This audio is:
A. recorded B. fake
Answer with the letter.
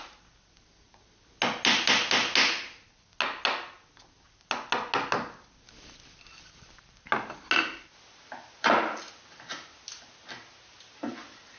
A